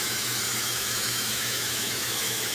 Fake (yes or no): yes